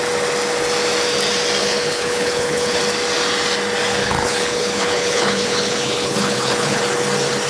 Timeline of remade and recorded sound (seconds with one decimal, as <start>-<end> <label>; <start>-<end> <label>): 0.0-1.6 recorded; 1.6-2.8 remade; 2.8-4.0 recorded; 4.0-6.8 remade; 6.8-7.5 recorded